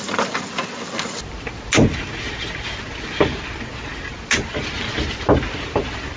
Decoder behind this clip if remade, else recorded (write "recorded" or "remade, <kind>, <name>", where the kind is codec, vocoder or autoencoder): recorded